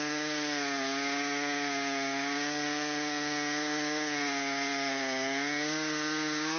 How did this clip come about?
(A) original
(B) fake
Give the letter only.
B